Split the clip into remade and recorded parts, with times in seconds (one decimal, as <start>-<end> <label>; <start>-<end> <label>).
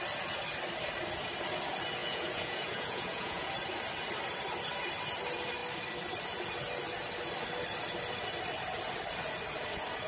0.0-2.0 recorded; 2.0-3.5 remade; 3.5-10.1 recorded